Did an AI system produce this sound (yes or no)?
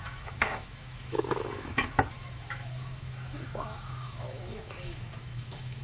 yes